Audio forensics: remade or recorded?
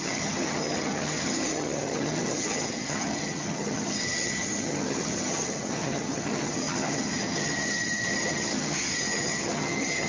remade